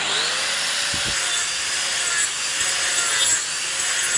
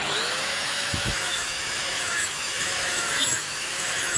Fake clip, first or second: second